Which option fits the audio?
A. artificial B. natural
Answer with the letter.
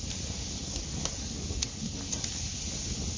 B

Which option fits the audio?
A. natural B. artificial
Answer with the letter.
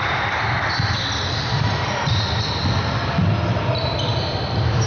A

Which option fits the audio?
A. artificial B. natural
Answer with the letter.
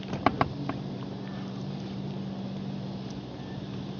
B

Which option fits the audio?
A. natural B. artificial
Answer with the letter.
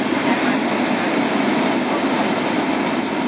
A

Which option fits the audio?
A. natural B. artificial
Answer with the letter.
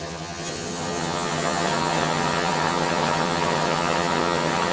B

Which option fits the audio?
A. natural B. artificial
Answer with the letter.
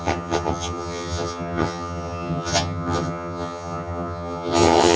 B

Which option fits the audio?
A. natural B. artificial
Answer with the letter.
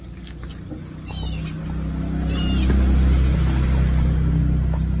A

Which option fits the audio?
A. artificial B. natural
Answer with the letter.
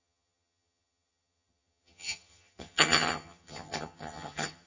A